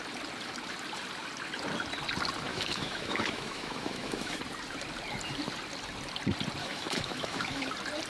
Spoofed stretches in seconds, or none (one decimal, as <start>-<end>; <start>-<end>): 2.5-4.4; 6.6-7.6